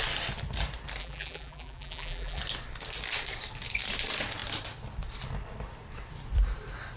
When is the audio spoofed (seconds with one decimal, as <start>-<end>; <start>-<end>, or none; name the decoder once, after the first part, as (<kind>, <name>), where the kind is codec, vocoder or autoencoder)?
1.0-2.4 (vocoder, BigVGAN v2)